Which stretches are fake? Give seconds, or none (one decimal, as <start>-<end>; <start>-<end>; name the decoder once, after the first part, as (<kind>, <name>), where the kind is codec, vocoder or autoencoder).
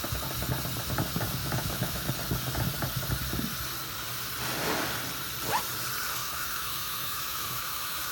1.4-2.1 (autoencoder, DAC-VAE); 6.2-8.1